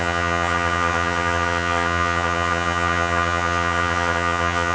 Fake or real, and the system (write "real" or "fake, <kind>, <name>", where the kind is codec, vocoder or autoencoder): fake, vocoder, HiFi-GAN